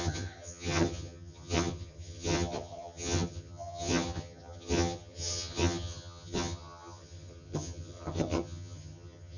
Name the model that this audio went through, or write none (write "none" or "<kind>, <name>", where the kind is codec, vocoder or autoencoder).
vocoder, HiFi-GAN